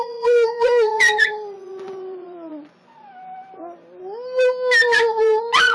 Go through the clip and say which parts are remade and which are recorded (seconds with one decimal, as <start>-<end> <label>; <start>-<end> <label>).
0.0-3.1 remade; 3.1-4.8 recorded; 4.8-5.7 remade